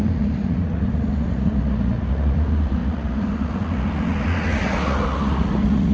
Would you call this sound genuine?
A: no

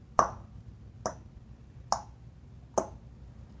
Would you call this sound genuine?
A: yes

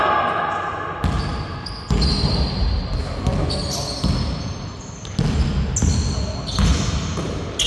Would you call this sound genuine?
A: yes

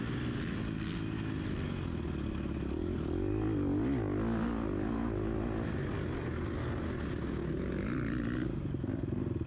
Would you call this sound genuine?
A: yes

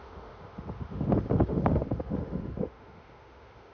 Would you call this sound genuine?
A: no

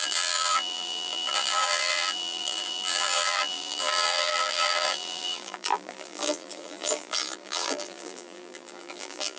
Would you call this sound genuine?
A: no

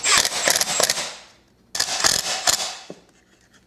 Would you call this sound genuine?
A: yes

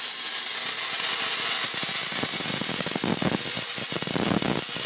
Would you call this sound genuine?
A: yes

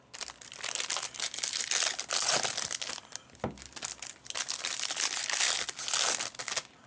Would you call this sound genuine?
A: yes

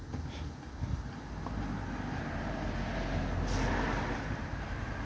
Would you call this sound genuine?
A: yes